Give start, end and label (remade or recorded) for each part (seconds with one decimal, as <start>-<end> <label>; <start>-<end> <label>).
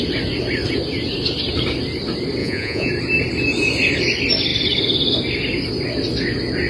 0.0-2.4 recorded; 2.4-2.9 remade; 2.9-6.7 recorded